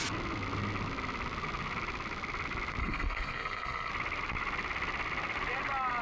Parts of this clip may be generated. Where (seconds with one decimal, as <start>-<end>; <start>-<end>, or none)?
2.8-3.9